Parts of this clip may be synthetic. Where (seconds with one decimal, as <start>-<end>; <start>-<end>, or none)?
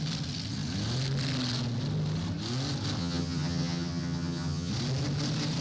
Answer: 3.0-4.7